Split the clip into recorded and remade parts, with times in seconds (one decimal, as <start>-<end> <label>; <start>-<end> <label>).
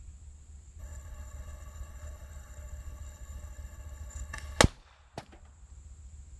0.0-0.8 recorded; 0.8-4.6 remade; 4.6-6.4 recorded